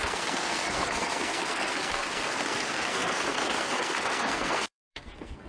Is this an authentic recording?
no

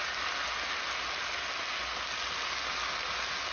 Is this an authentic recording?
yes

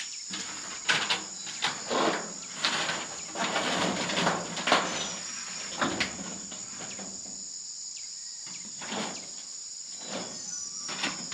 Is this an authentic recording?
yes